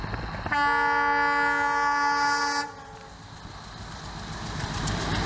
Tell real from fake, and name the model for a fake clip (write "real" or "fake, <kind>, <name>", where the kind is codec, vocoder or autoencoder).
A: real